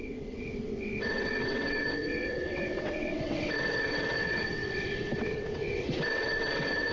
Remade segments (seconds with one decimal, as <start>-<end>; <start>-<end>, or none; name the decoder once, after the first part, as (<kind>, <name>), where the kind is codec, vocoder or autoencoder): 0.0-6.9 (vocoder, WaveNeXt)